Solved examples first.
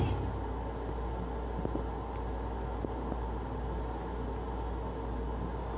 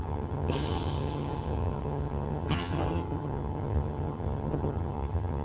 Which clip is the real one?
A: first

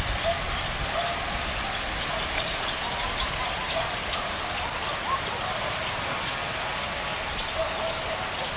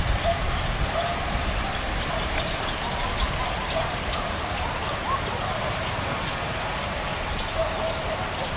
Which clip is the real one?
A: first